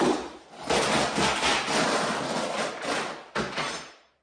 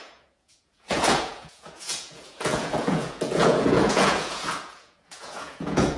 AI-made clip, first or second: second